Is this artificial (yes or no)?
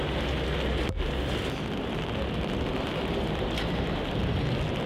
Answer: no